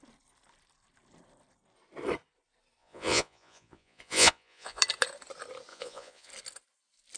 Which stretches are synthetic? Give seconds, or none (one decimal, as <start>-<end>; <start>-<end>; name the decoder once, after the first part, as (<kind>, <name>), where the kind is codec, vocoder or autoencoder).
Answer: 2.8-4.8 (vocoder, Vocos); 5.7-6.3